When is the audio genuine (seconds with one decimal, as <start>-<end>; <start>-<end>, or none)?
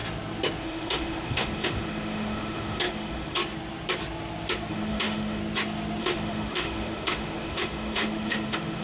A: 0.0-0.6; 3.4-4.7; 5.4-6.0